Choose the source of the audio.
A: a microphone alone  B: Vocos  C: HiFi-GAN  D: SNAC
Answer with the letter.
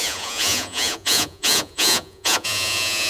B